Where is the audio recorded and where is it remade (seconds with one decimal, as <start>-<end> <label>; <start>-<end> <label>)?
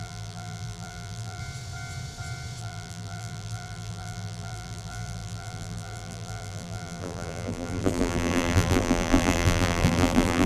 0.0-1.4 remade; 1.4-2.6 recorded; 2.6-10.5 remade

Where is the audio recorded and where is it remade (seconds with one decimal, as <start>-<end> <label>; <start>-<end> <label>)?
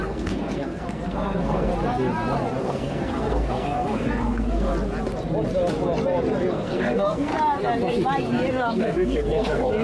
0.0-1.7 remade; 1.7-2.6 recorded; 2.6-4.7 remade; 4.7-6.5 recorded; 6.5-7.3 remade; 7.3-8.5 recorded; 8.5-9.8 remade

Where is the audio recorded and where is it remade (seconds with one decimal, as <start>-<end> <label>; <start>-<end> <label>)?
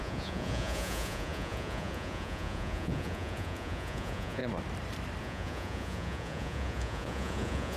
0.0-4.4 remade; 4.4-5.2 recorded; 5.2-7.8 remade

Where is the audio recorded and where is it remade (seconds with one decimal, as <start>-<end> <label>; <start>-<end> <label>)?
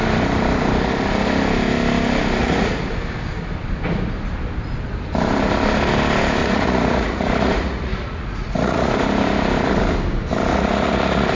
0.0-2.4 recorded; 2.4-2.9 remade; 2.9-6.4 recorded; 6.4-8.9 remade; 8.9-10.5 recorded; 10.5-11.3 remade